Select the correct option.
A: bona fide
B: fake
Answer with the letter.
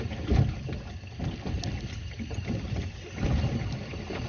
A